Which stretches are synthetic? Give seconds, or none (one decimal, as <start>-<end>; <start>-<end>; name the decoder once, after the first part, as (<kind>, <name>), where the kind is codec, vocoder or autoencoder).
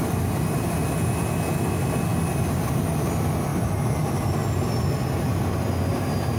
3.5-5.7 (vocoder, BigVGAN v2)